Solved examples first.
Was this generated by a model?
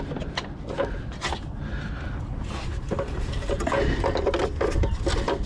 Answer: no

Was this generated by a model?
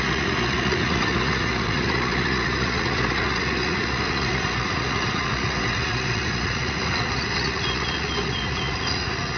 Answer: yes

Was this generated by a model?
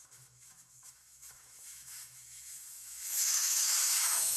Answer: yes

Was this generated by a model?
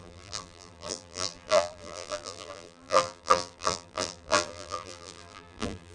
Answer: yes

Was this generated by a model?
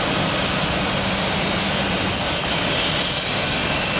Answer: no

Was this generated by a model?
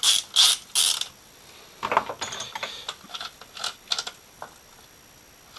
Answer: no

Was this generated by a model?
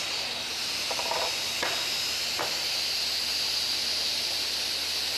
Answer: no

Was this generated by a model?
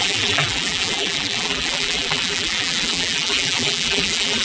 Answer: yes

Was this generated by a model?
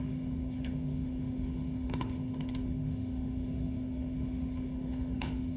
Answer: yes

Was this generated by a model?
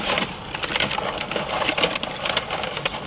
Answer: no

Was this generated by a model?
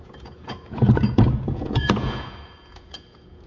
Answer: yes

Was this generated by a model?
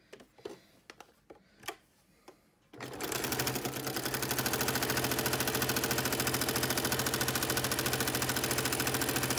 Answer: no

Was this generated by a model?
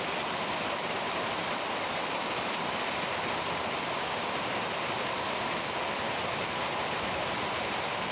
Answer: no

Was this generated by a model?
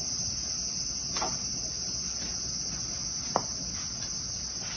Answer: no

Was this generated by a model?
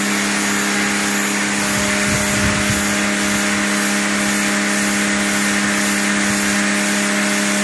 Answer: no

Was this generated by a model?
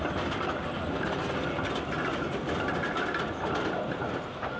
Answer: no